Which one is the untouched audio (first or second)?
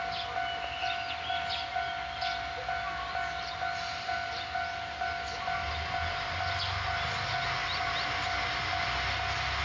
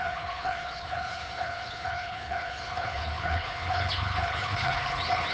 first